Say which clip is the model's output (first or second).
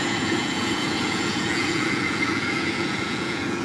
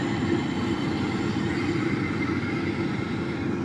first